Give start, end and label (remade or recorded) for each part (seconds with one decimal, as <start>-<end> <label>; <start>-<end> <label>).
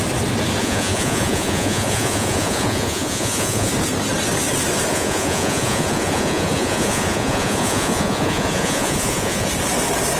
0.0-0.6 recorded; 0.6-3.7 remade; 3.7-4.9 recorded; 4.9-9.5 remade; 9.5-10.2 recorded